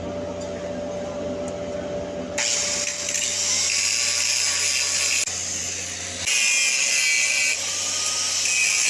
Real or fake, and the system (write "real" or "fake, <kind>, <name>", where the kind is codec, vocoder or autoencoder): real